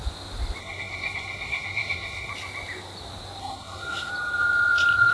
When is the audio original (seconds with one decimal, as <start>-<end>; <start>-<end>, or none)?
0.0-0.6; 2.3-3.4; 4.1-5.1